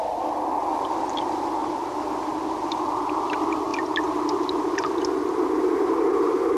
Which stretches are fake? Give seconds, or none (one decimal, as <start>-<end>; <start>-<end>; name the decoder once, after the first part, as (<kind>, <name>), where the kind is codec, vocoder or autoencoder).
none

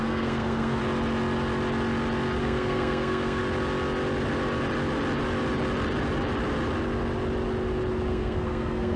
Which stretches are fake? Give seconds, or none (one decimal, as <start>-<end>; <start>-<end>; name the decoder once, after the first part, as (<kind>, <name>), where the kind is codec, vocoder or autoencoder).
0.0-0.8 (codec, SNAC); 2.4-3.4; 8.1-9.0